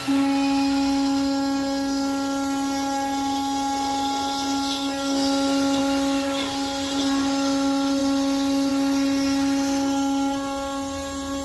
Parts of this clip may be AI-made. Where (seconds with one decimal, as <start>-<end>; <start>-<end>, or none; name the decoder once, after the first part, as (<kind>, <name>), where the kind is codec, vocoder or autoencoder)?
none